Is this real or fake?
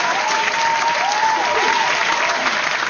real